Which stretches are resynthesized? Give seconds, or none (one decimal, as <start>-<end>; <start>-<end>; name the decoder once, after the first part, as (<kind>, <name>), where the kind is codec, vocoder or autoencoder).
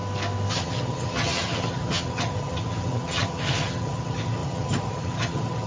0.5-5.7 (vocoder, HiFi-GAN)